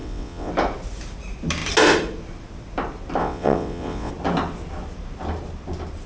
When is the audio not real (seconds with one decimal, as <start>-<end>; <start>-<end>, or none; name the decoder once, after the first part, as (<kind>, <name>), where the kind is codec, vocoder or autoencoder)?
0.0-0.5 (vocoder, WaveNeXt); 3.2-4.1